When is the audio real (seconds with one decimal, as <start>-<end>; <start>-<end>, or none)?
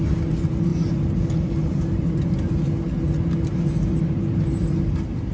0.0-0.7; 2.5-5.3